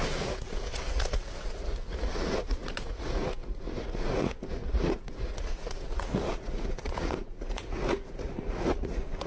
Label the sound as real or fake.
fake